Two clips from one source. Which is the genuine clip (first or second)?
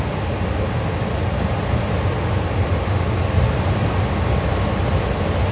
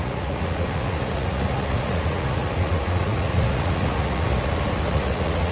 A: first